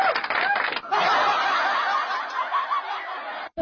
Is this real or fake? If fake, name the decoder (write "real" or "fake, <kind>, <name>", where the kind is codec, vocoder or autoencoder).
real